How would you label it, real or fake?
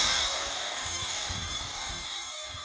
fake